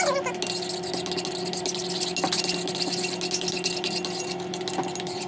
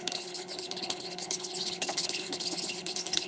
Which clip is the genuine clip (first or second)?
first